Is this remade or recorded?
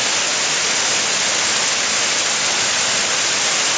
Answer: recorded